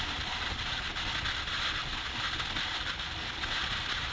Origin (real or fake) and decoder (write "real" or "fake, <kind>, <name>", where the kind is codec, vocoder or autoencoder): real